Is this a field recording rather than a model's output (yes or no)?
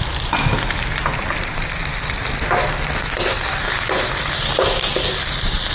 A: yes